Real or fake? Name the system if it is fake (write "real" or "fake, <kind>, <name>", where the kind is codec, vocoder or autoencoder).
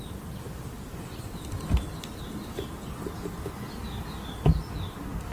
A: real